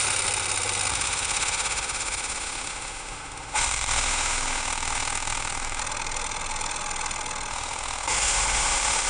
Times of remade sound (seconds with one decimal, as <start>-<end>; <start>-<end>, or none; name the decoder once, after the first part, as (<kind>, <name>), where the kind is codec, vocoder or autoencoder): 0.9-5.8 (autoencoder, DAC-VAE); 7.5-9.1

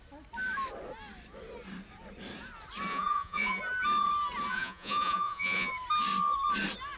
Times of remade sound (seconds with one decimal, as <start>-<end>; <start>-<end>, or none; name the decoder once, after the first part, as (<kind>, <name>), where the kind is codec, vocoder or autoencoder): 2.9-3.6 (vocoder, Vocos); 4.5-5.7

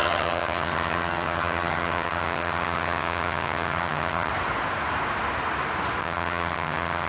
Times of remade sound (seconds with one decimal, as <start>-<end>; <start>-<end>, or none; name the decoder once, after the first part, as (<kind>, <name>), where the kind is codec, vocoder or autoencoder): 0.0-4.3 (vocoder, HiFi-GAN); 6.0-7.1

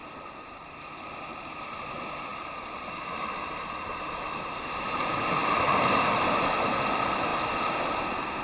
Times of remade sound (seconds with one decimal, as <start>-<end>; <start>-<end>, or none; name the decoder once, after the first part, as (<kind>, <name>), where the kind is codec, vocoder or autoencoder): 0.0-0.8 (vocoder, BigVGAN v2); 2.3-3.2; 5.4-6.0

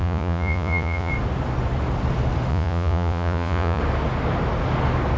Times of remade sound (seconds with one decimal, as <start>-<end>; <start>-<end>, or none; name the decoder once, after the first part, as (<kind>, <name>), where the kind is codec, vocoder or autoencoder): 0.0-1.1 (vocoder, Vocos); 2.5-3.8

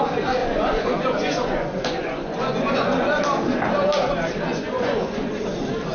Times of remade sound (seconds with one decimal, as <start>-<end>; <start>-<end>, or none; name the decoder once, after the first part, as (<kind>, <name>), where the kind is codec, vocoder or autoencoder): 0.4-3.2 (vocoder, Vocos); 4.5-5.3

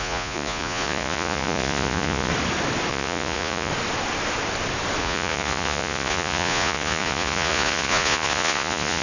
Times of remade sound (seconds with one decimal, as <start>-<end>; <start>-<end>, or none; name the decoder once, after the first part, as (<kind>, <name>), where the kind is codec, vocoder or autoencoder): 0.0-2.3 (vocoder, Vocos); 2.9-3.7; 5.0-9.0